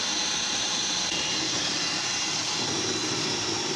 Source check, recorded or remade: remade